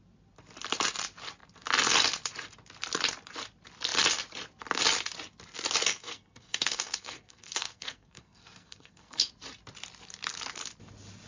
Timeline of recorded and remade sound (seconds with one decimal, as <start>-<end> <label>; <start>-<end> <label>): 0.0-5.9 recorded; 5.9-9.3 remade; 9.3-11.3 recorded